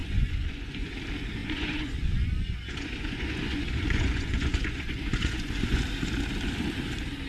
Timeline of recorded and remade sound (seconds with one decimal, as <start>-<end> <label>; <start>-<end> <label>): 0.0-0.9 remade; 0.9-1.4 recorded; 1.4-5.8 remade; 5.8-7.3 recorded